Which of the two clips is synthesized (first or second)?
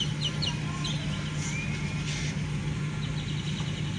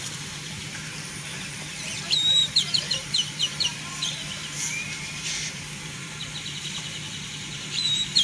second